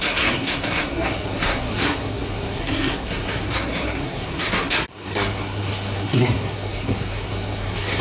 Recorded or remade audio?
remade